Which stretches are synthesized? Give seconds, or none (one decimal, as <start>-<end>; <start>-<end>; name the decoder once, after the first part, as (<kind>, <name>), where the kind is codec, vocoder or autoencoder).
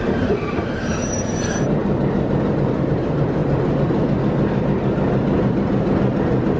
0.0-1.8 (vocoder, BigVGAN v2); 2.5-3.4